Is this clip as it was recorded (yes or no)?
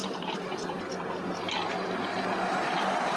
yes